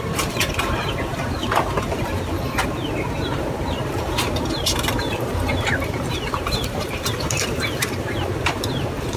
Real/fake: fake